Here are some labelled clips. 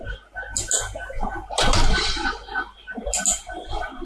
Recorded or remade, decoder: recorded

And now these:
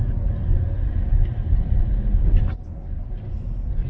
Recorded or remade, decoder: recorded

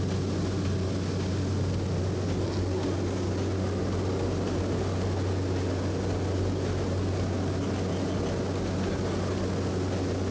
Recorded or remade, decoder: recorded